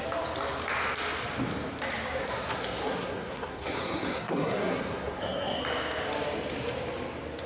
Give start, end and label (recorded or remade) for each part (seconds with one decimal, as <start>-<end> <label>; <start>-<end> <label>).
0.0-2.2 recorded; 2.2-5.6 remade; 5.6-7.5 recorded